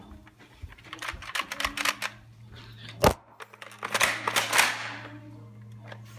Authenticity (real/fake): real